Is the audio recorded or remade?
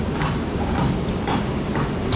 remade